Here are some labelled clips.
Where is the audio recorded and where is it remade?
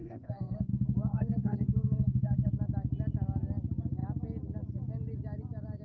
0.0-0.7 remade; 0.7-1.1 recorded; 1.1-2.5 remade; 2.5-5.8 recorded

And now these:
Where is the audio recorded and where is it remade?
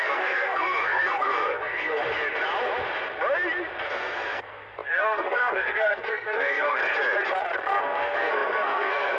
0.0-2.0 remade; 2.0-3.8 recorded; 3.8-6.8 remade; 6.8-7.8 recorded; 7.8-9.2 remade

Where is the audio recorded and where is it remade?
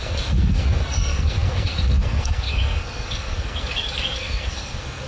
0.0-5.1 remade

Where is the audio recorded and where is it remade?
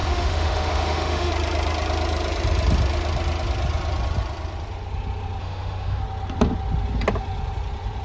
0.0-1.3 remade; 1.3-5.4 recorded; 5.4-6.0 remade; 6.0-8.0 recorded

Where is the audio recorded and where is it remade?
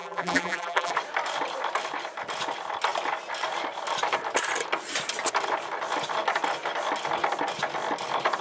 0.0-0.9 remade; 0.9-8.4 recorded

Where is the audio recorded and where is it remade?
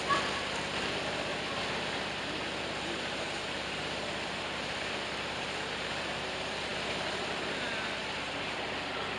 0.0-1.3 remade; 1.3-2.4 recorded; 2.4-9.2 remade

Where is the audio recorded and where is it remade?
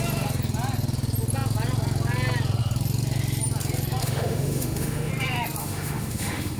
0.0-4.0 recorded; 4.0-5.1 remade; 5.1-5.6 recorded; 5.6-6.6 remade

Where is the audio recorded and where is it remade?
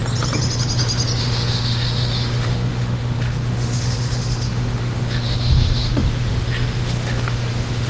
0.0-1.2 recorded; 1.2-7.9 remade